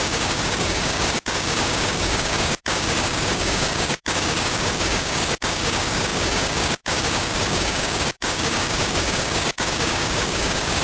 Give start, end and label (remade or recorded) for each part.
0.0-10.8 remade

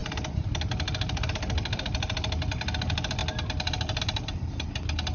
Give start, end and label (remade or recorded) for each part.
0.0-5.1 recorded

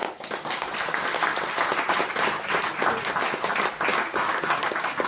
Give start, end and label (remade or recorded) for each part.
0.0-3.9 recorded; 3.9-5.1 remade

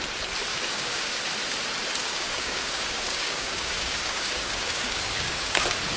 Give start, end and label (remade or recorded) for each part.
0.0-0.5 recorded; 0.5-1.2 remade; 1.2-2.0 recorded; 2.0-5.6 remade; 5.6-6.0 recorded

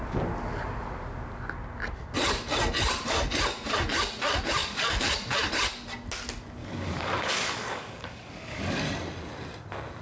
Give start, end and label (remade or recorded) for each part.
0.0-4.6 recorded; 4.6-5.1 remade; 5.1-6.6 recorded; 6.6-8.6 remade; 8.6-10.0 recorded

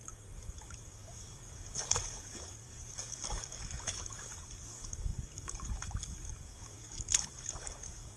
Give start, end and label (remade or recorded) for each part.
0.0-8.2 remade

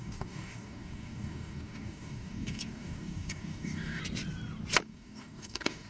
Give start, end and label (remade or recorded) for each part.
0.0-4.0 remade; 4.0-4.8 recorded; 4.8-5.9 remade